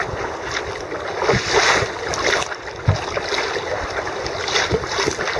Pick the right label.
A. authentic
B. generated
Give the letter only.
A